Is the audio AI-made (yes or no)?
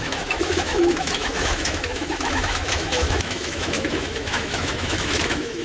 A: yes